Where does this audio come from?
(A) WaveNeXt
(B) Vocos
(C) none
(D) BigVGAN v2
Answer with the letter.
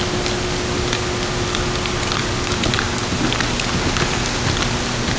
C